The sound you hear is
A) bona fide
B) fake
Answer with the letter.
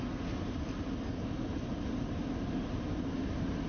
A